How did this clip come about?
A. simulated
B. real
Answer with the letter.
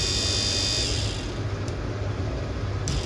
B